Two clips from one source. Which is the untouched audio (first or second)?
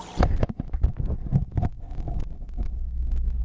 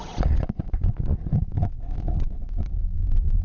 first